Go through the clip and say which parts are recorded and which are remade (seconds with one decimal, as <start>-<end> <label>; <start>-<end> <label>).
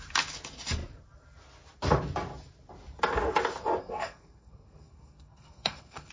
0.0-3.8 recorded; 3.8-6.1 remade